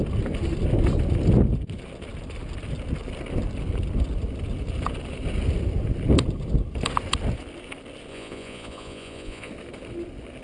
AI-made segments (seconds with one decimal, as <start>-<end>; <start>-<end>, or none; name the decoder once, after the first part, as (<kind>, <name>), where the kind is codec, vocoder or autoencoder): 8.1-9.5 (vocoder, Vocos)